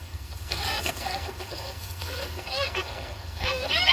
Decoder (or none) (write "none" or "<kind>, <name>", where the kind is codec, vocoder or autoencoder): codec, SNAC